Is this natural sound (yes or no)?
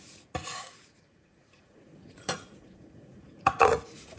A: no